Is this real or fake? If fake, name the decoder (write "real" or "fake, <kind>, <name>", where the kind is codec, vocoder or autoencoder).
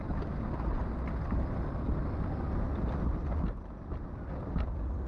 real